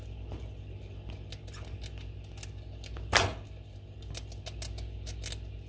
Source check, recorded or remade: recorded